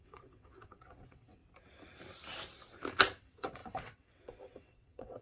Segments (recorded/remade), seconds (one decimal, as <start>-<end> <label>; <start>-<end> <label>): 0.0-1.4 remade; 1.4-3.2 recorded; 3.2-5.2 remade